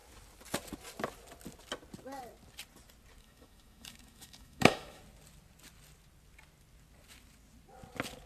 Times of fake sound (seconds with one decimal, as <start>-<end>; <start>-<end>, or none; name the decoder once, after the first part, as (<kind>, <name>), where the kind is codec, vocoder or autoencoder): 3.2-5.0 (autoencoder, DAC-VAE)